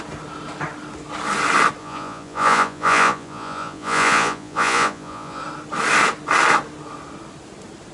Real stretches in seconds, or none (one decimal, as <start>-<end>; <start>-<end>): 0.0-1.8; 5.4-7.9